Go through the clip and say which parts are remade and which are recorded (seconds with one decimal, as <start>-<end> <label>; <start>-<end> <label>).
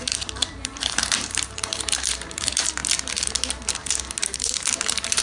0.0-2.8 remade; 2.8-4.4 recorded; 4.4-5.2 remade